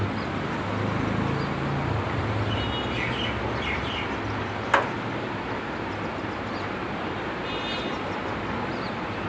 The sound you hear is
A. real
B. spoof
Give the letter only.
A